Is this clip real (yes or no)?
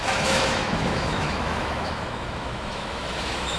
no